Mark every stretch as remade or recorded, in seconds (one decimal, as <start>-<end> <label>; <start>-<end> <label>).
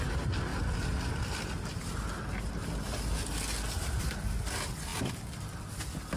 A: 0.0-6.2 recorded